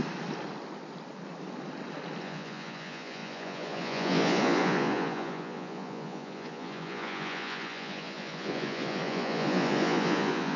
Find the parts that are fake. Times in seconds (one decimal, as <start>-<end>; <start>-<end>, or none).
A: 2.2-10.6